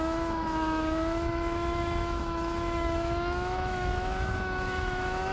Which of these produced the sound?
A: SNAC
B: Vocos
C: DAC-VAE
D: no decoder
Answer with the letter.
C